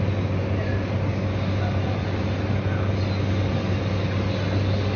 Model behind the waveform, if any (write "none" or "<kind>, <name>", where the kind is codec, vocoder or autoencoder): none